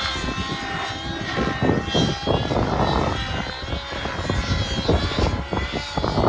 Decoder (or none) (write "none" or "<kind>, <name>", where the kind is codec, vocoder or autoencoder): none